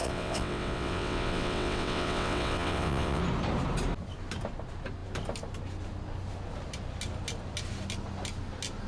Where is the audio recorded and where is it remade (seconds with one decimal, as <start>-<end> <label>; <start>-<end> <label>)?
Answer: 0.0-3.2 remade; 3.2-8.9 recorded